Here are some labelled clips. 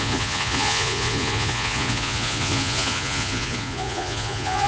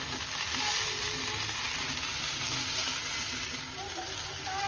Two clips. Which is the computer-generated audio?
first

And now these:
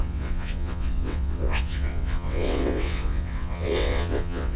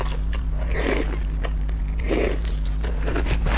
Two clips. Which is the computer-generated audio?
first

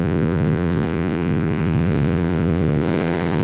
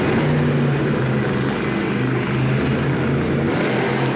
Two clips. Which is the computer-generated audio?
first